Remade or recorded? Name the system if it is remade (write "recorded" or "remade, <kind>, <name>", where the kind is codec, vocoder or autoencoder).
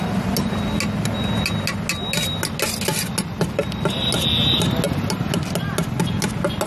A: recorded